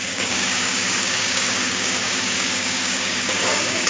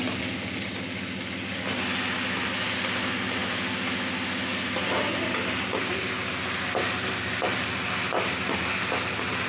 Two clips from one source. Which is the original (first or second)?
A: second